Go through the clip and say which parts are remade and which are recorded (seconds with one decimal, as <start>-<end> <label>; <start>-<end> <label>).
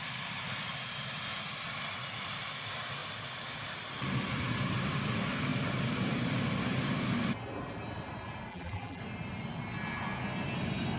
0.0-8.5 recorded; 8.5-9.0 remade; 9.0-11.0 recorded